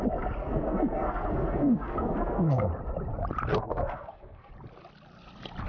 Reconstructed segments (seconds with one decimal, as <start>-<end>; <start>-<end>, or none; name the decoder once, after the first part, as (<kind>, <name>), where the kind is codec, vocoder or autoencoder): 0.4-2.7 (codec, SNAC); 3.5-4.5